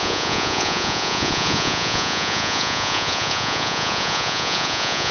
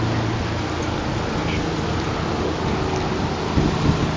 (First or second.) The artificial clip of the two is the first